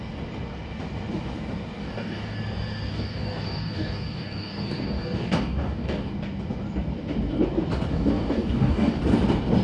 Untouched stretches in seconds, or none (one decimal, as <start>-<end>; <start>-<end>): 0.0-1.8; 2.4-2.9; 6.1-7.9; 9.0-9.6